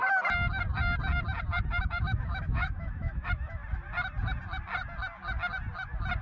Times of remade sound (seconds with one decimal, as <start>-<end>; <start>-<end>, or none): 1.7-3.6